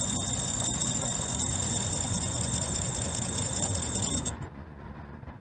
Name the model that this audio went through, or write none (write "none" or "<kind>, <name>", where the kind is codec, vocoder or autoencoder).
vocoder, Vocos